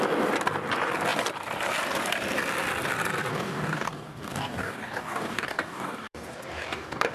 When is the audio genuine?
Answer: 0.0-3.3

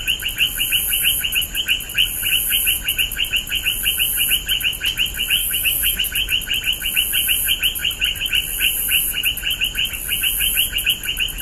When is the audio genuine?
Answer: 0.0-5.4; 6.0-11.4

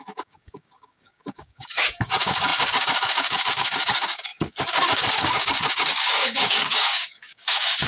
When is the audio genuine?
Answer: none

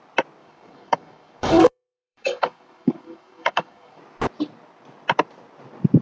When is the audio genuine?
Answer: 0.0-0.4; 4.0-6.0

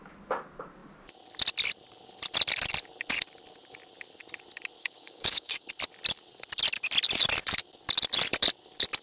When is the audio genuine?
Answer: 0.0-4.8; 5.7-9.0

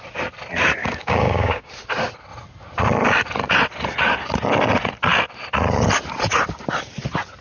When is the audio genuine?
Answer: 0.0-0.8; 1.7-7.4